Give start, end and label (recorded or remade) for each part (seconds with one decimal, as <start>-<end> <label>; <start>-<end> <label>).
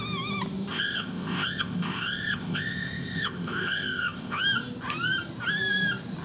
0.0-0.7 recorded; 0.7-4.4 remade; 4.4-6.2 recorded